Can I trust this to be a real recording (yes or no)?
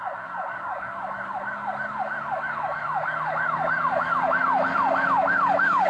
no